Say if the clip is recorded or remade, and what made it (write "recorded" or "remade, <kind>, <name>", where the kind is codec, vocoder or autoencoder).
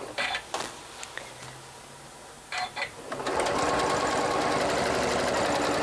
recorded